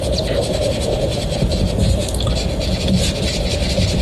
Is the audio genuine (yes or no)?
yes